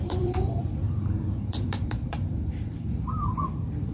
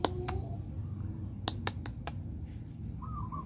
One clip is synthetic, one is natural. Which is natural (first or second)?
second